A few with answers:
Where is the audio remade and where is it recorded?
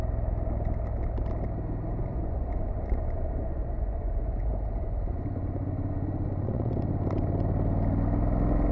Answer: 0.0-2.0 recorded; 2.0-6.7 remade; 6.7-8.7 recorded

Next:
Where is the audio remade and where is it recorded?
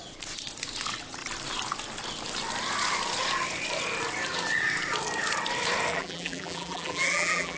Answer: 0.0-5.9 recorded; 5.9-7.6 remade